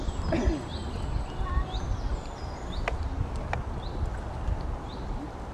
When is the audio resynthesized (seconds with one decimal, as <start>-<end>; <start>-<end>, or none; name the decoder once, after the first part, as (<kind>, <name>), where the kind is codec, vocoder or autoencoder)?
none

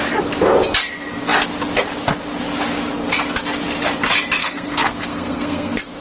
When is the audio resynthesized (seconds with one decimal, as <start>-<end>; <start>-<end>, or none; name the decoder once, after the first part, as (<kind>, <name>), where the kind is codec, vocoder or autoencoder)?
4.4-6.0 (codec, SNAC)

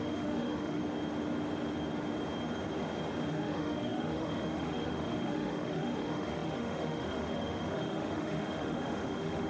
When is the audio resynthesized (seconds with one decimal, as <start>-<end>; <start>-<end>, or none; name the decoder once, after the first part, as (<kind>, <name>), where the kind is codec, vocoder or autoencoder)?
0.0-0.8 (autoencoder, DAC-VAE); 3.3-9.5

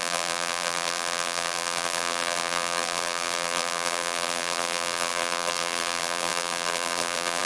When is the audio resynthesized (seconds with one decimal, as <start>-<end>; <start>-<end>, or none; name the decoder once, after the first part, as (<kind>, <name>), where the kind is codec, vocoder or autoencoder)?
0.0-7.4 (vocoder, BigVGAN v2)

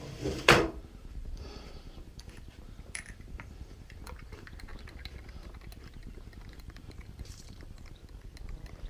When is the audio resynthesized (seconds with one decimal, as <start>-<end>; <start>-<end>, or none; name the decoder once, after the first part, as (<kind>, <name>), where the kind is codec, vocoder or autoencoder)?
0.0-4.7 (vocoder, BigVGAN v2); 5.8-8.0

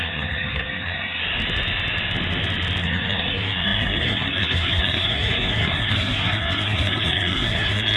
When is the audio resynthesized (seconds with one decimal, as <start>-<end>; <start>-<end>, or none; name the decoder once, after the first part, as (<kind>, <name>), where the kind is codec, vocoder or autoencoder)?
0.0-1.2 (codec, SNAC); 2.8-8.0

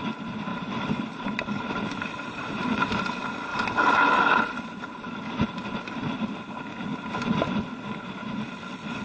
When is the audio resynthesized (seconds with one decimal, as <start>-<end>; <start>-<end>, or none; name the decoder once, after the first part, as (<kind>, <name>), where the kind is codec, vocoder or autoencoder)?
0.5-2.9 (vocoder, BigVGAN v2); 3.5-5.1

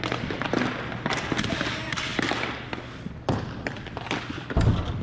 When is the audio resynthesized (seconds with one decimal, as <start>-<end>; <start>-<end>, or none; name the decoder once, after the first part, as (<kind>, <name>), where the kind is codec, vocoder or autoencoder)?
none